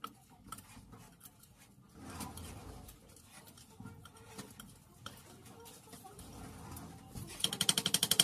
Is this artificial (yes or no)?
no